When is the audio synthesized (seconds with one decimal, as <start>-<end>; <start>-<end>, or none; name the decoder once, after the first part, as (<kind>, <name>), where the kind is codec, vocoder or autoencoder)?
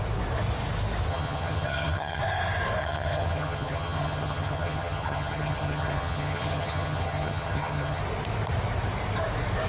1.1-2.2 (vocoder, HiFi-GAN); 2.8-8.0